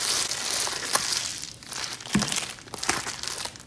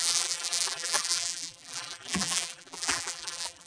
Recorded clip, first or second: first